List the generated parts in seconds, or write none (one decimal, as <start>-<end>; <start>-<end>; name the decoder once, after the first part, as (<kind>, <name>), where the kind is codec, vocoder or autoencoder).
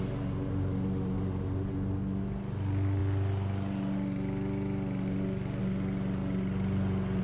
none